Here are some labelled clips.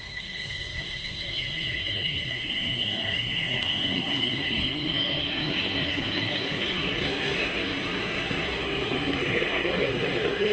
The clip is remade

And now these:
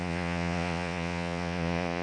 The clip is remade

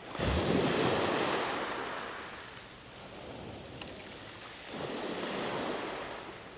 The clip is recorded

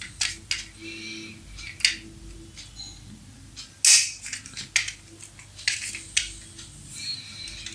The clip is recorded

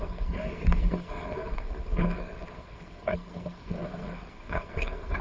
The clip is remade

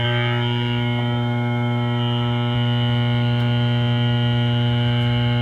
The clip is remade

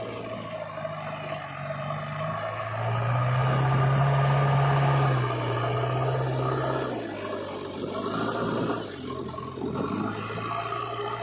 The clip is recorded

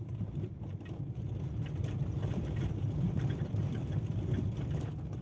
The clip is recorded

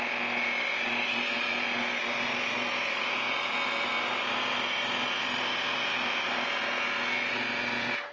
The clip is recorded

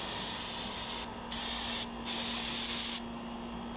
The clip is recorded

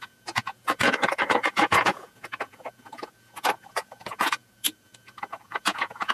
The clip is remade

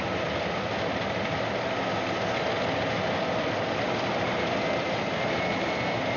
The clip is recorded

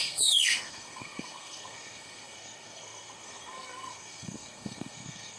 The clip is remade